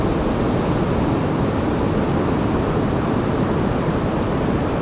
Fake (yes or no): no